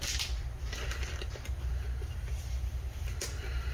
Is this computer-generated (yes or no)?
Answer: no